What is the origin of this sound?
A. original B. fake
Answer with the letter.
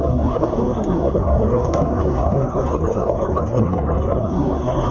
B